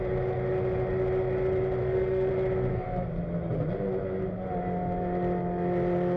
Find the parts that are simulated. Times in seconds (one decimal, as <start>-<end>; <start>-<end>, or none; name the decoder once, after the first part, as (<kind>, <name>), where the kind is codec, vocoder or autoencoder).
1.8-2.3 (codec, SNAC); 2.7-3.2